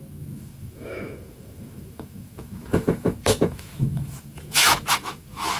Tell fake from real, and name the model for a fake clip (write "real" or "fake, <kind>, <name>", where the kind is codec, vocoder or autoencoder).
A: fake, autoencoder, DAC-VAE